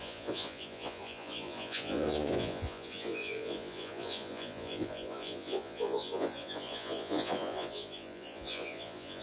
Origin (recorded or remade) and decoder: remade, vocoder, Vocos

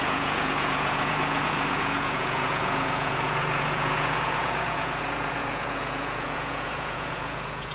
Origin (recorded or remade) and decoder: remade, vocoder, Vocos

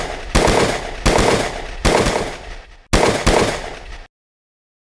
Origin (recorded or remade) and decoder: recorded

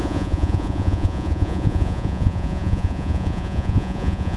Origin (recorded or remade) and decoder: remade, vocoder, Vocos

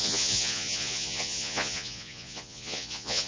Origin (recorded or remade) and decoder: remade, vocoder, Vocos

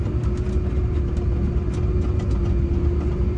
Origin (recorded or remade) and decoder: recorded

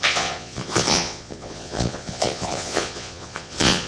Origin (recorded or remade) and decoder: remade, vocoder, Vocos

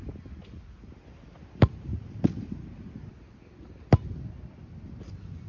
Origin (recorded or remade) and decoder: recorded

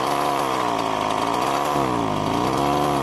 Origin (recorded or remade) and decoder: recorded